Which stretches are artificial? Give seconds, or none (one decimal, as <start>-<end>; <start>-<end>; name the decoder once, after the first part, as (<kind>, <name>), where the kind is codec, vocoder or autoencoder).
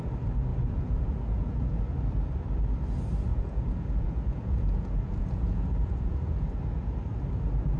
0.5-1.8 (vocoder, Vocos); 3.3-6.6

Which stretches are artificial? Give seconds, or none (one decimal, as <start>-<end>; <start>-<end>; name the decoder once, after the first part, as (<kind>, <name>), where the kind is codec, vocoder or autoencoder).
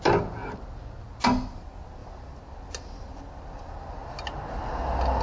none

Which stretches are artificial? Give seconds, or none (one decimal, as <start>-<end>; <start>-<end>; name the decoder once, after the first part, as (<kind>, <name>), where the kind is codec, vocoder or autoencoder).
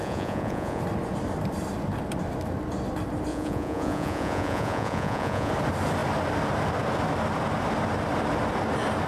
0.0-0.8 (vocoder, Vocos); 3.3-5.5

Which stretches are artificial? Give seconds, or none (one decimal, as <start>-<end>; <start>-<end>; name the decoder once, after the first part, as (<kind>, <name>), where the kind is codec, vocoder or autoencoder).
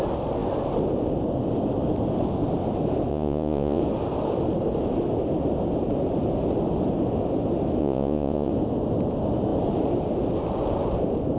3.1-3.8 (vocoder, Vocos); 7.8-8.5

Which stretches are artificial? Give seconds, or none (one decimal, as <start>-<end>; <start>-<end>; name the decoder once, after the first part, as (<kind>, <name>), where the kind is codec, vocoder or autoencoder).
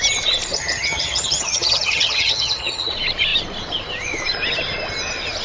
0.5-2.9 (vocoder, HiFi-GAN)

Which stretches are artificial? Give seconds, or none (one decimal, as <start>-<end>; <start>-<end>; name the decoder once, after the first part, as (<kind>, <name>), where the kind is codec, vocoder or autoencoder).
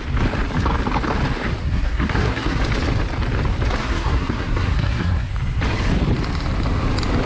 1.6-2.6 (codec, SNAC); 3.8-5.3